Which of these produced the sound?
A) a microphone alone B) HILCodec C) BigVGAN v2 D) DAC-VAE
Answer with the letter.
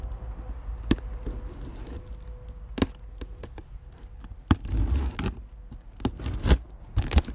A